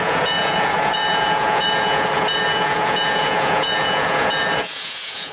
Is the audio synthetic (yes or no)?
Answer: yes